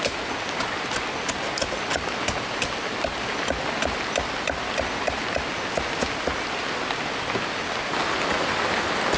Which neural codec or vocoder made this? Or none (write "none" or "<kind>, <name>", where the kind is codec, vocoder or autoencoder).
none